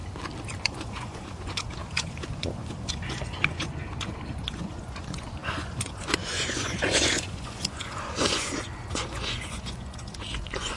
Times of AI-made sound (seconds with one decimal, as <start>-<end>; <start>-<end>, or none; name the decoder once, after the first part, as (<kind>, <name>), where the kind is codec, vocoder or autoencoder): 0.6-10.8 (vocoder, Vocos)